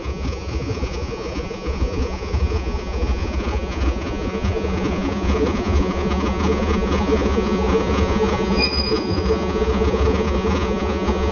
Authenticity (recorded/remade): remade